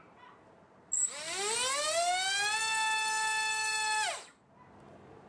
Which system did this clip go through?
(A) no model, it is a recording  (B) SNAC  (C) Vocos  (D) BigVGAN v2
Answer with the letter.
A